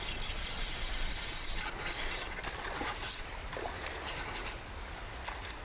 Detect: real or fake real